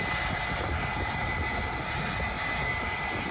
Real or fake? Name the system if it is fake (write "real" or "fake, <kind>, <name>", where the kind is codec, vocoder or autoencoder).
real